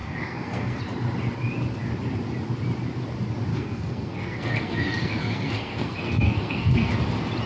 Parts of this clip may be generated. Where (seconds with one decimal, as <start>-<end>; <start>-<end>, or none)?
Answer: 0.0-0.8; 3.5-6.9